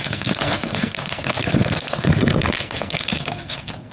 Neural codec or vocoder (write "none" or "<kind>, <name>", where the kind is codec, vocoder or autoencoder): codec, SNAC